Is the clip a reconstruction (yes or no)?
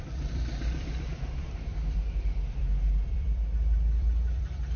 yes